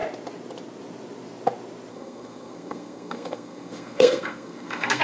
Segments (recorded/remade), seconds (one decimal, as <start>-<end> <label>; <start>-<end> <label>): 0.0-1.9 recorded; 1.9-5.0 remade